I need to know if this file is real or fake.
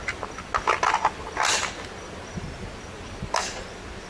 real